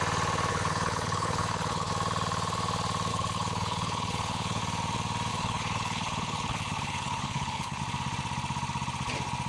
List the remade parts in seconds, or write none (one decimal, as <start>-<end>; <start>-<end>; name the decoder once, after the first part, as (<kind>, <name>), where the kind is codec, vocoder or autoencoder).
0.5-1.9 (codec, HILCodec); 3.1-4.6; 5.3-7.8